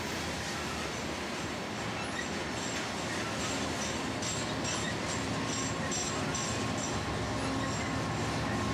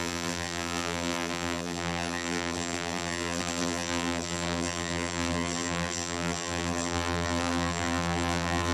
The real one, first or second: first